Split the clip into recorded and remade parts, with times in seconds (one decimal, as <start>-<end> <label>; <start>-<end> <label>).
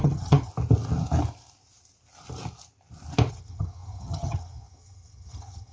0.0-0.5 remade; 0.5-3.3 recorded; 3.3-5.7 remade